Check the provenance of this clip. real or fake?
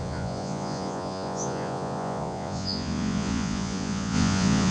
fake